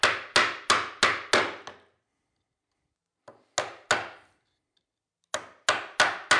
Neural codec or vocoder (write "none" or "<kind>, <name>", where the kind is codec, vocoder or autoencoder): none